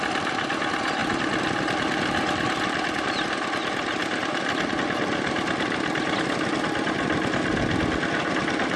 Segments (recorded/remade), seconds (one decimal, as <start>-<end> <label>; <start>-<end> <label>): 0.0-1.0 recorded; 1.0-4.7 remade; 4.7-6.5 recorded; 6.5-7.0 remade; 7.0-8.8 recorded